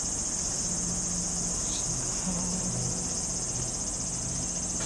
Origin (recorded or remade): recorded